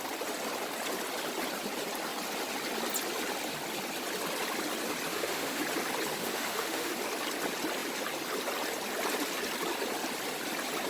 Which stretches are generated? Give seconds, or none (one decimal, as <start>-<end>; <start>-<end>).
5.1-5.6; 6.2-6.9